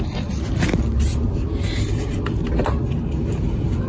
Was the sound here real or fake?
real